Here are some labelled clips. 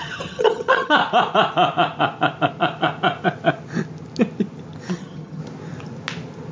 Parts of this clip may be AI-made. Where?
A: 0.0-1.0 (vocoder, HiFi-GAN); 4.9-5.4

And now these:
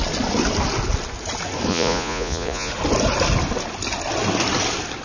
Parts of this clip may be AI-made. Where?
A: 1.7-2.7 (vocoder, Vocos)

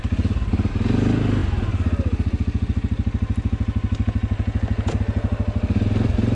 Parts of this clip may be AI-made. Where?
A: none

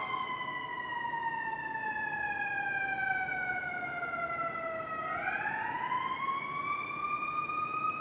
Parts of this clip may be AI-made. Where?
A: none

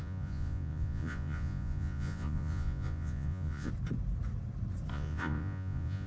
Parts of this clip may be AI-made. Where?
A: 0.0-3.7 (vocoder, Vocos); 4.9-6.1